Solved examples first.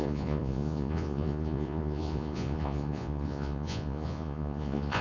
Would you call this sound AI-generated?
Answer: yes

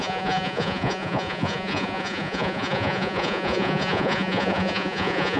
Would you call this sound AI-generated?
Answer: yes